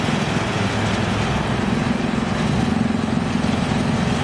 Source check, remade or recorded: recorded